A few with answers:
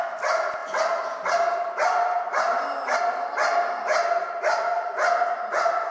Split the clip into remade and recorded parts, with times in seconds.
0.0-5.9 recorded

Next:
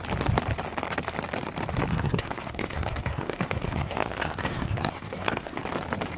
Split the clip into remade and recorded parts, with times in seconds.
0.0-1.9 recorded; 1.9-5.6 remade; 5.6-6.2 recorded

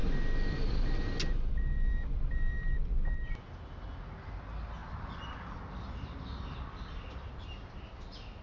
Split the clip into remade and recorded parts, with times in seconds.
0.0-8.4 recorded

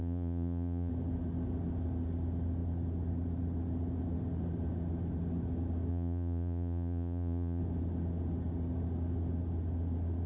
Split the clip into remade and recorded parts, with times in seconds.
0.0-0.9 remade; 0.9-5.9 recorded; 5.9-7.6 remade; 7.6-10.3 recorded

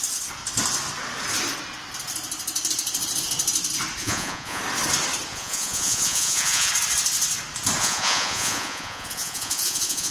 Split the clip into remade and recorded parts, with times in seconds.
0.0-4.0 recorded; 4.0-4.6 remade; 4.6-5.3 recorded; 5.3-6.7 remade; 6.7-7.8 recorded; 7.8-10.1 remade